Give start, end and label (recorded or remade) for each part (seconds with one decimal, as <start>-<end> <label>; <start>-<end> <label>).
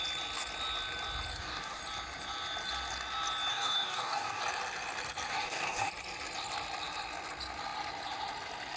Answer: 0.0-1.3 recorded; 1.3-1.8 remade; 1.8-3.5 recorded; 3.5-4.4 remade; 4.4-5.3 recorded; 5.3-5.9 remade; 5.9-8.8 recorded